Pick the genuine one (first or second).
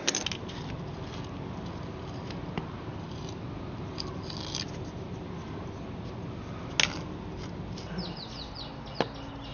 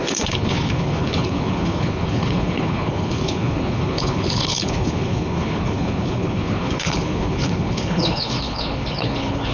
first